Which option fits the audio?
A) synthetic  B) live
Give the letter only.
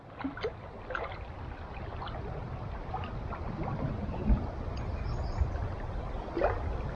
B